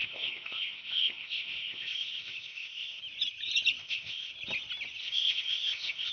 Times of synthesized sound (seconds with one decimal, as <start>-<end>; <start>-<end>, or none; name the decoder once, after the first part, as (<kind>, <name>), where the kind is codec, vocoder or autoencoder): 0.0-3.0 (codec, ZipCodec); 3.8-4.3; 5.0-6.1